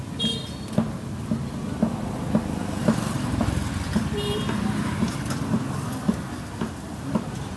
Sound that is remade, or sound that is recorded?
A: recorded